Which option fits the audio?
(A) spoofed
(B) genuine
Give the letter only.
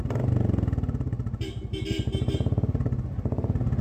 B